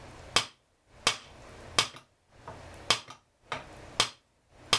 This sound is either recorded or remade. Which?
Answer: recorded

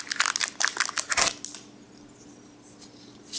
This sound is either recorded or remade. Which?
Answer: recorded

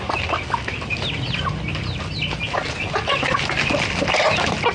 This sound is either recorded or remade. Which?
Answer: recorded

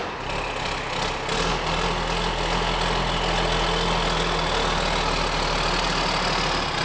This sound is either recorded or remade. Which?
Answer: recorded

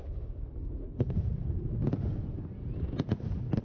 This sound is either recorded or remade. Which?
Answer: recorded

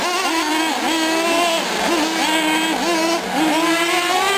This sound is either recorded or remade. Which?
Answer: recorded